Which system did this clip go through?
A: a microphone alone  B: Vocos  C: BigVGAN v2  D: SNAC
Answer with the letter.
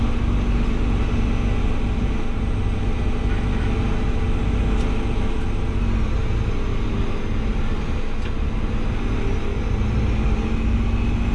A